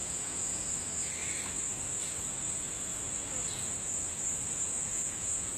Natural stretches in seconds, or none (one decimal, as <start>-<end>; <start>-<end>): 0.7-4.9